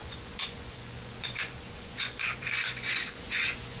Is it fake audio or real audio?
fake